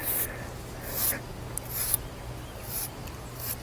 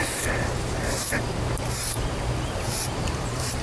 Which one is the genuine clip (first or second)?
first